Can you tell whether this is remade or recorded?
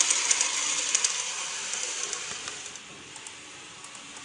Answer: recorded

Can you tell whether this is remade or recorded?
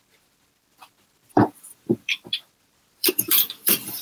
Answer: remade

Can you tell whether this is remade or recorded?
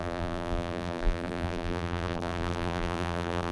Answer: remade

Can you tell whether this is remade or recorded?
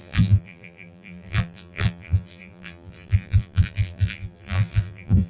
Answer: remade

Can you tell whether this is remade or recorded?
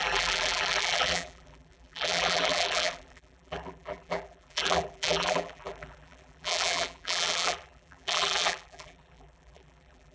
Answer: remade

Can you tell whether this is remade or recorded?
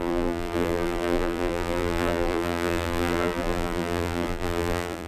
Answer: remade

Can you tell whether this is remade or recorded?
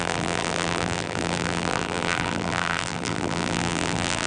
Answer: remade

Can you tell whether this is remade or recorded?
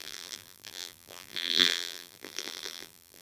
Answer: remade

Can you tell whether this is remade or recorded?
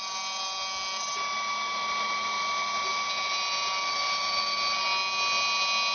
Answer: recorded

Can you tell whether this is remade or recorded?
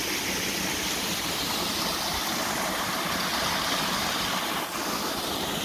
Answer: recorded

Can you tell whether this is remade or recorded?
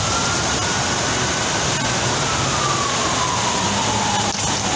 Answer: recorded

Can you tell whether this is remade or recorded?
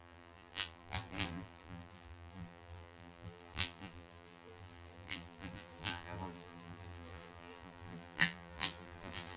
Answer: remade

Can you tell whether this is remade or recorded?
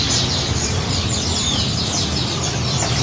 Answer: remade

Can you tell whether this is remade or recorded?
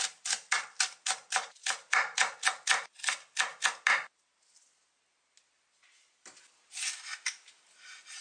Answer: recorded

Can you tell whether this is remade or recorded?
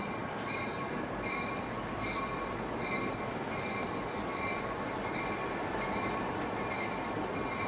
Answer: remade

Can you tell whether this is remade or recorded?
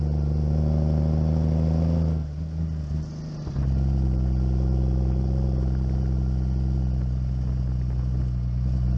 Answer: recorded